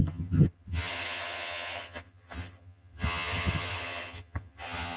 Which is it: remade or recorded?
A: remade